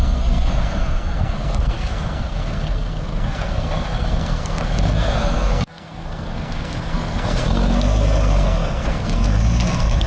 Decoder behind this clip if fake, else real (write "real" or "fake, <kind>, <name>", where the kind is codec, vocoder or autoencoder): fake, codec, SNAC